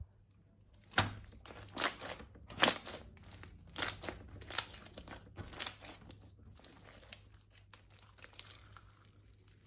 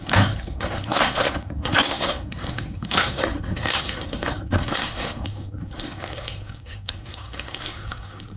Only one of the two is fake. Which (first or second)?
second